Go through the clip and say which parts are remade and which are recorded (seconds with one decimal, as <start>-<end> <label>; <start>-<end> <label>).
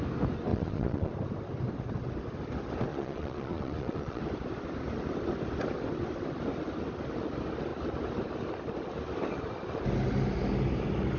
0.0-0.5 recorded; 0.5-1.1 remade; 1.1-2.9 recorded; 2.9-4.2 remade; 4.2-11.2 recorded